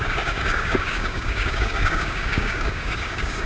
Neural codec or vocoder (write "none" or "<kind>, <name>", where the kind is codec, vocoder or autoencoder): codec, DAC